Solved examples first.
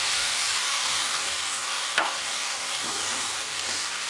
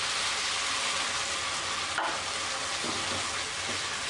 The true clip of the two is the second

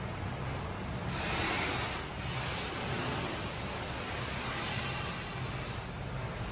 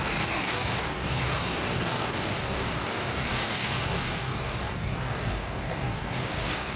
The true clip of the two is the first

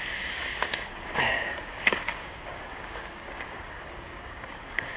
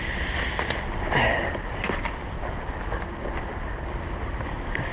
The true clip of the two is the second